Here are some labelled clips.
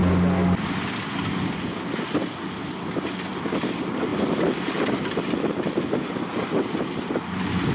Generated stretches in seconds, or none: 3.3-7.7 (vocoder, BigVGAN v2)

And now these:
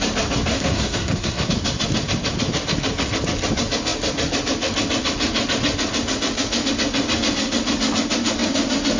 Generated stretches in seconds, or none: 0.5-1.5 (codec, SNAC)

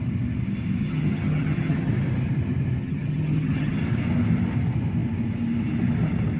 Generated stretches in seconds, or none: 0.8-1.9 (vocoder, HiFi-GAN); 2.8-3.8